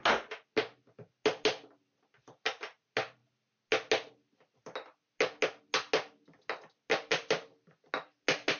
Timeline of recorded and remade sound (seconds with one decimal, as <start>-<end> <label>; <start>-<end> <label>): 0.0-8.6 recorded